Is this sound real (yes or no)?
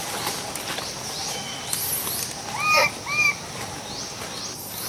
yes